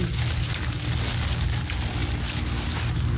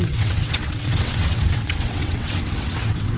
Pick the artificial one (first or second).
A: second